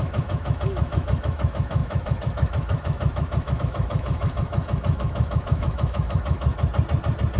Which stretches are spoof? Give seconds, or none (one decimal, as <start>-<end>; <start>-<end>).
0.0-6.5